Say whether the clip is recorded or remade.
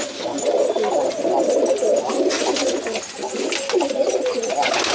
recorded